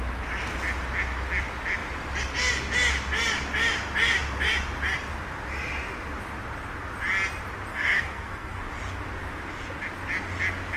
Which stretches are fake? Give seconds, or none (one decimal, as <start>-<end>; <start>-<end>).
7.7-8.6